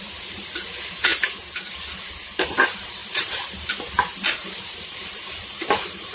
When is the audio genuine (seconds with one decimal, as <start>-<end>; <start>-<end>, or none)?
1.1-2.4